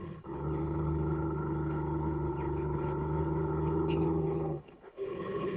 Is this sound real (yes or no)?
no